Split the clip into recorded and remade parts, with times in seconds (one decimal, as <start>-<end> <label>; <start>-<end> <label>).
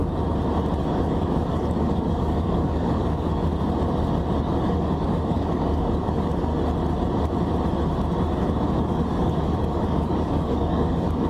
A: 0.0-0.8 recorded; 0.8-3.5 remade; 3.5-4.4 recorded; 4.4-6.5 remade; 6.5-8.8 recorded; 8.8-11.3 remade